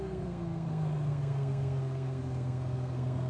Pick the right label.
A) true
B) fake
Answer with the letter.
B